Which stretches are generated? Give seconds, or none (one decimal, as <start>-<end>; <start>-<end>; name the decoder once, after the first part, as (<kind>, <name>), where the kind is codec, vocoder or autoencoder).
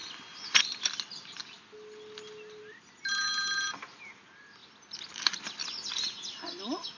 none